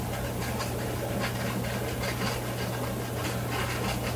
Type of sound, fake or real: real